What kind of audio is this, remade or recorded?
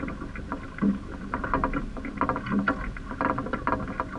recorded